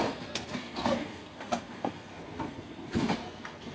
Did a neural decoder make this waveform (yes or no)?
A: yes